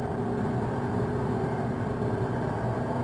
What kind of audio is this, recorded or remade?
recorded